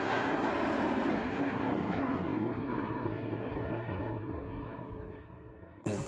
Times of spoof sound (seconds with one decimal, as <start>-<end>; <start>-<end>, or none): 0.0-0.5; 1.1-6.1

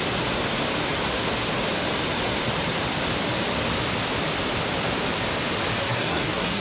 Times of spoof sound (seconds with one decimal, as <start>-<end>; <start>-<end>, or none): 5.8-6.6

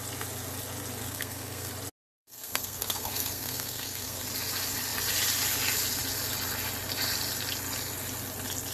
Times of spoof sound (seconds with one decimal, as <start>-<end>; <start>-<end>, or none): 1.0-1.7; 2.2-4.2

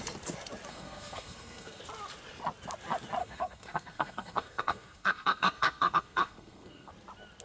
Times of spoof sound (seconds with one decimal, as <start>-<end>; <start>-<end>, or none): 0.7-1.8; 3.2-6.9